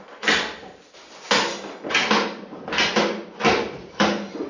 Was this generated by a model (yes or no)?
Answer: no